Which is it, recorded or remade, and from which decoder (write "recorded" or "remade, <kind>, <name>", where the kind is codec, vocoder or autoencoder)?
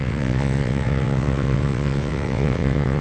remade, vocoder, WaveNeXt